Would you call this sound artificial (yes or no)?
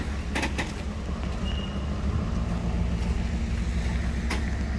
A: no